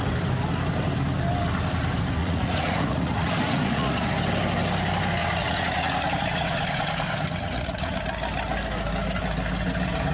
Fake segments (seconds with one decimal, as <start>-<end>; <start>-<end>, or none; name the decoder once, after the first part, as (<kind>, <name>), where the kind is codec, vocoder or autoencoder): 2.2-4.1 (vocoder, Vocos); 5.2-8.0